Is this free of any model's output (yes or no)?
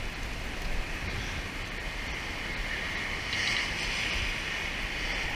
yes